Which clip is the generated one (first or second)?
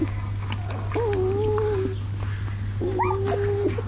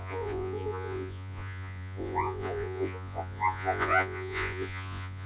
second